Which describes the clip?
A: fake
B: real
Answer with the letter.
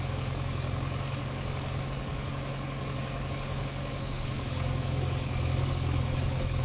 A